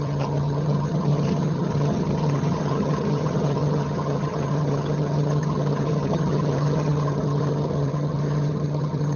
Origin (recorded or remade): remade